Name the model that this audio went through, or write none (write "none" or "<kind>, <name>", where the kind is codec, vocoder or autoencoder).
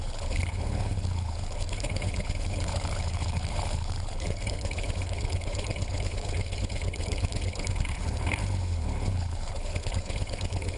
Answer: codec, HILCodec